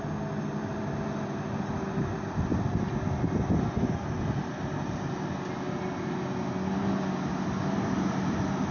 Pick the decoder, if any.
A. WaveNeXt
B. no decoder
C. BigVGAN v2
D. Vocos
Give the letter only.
B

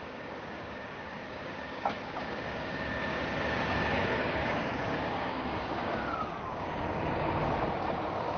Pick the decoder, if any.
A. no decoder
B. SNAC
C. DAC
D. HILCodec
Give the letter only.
C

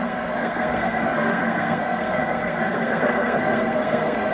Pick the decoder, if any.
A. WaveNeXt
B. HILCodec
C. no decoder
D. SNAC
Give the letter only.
D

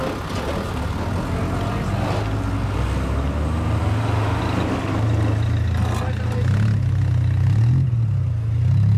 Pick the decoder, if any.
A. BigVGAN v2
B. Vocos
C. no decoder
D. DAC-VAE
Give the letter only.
C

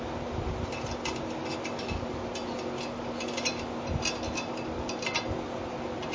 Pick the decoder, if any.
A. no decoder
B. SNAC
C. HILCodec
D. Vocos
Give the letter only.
A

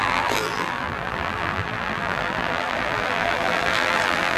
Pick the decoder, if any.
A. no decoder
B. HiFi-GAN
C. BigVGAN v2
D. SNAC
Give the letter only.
C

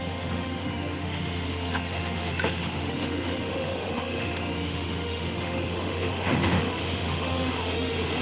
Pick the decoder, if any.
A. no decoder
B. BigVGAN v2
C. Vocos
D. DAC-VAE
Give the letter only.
D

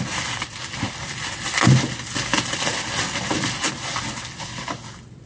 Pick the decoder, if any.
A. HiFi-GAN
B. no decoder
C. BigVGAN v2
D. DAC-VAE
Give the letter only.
B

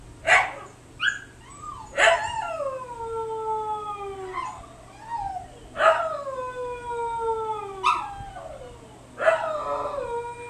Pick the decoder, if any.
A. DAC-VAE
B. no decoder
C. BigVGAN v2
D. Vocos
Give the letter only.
B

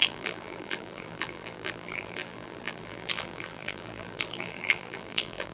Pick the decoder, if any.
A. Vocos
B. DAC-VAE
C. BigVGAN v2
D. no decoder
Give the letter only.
C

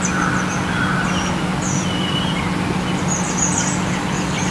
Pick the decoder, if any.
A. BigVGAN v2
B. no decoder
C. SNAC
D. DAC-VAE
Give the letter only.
B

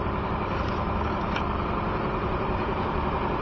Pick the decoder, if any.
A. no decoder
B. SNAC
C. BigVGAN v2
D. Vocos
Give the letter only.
C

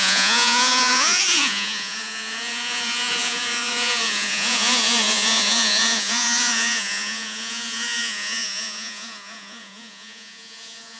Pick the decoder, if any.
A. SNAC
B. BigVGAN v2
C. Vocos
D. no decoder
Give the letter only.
C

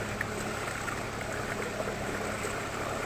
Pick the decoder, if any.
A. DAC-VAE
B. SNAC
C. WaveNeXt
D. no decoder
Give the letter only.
D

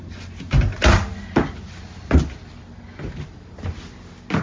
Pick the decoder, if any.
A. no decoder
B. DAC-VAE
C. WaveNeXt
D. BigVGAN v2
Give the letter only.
A